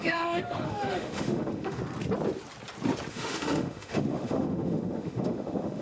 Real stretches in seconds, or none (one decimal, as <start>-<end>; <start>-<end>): 1.8-3.1